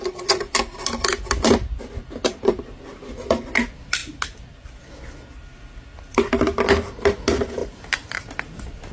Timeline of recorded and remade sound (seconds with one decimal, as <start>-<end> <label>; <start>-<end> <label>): 0.0-7.6 recorded; 7.6-8.2 remade; 8.2-8.9 recorded